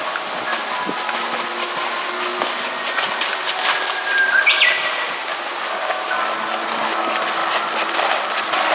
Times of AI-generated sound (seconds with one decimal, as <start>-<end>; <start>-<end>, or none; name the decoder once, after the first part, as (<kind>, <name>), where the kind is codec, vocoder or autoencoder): none